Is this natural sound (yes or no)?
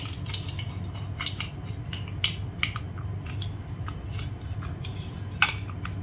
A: yes